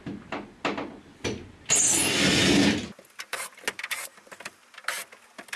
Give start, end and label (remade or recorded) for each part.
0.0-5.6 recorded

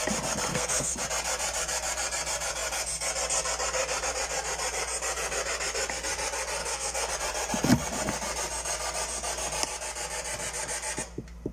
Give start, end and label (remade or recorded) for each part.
0.0-0.5 recorded; 0.5-1.0 remade; 1.0-6.6 recorded; 6.6-7.1 remade; 7.1-11.5 recorded

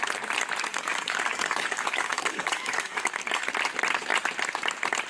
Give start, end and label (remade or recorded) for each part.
0.0-0.7 recorded; 0.7-3.5 remade; 3.5-5.1 recorded

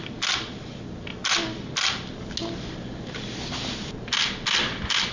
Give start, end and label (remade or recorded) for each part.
0.0-5.1 recorded